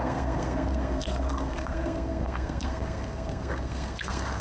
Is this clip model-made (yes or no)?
yes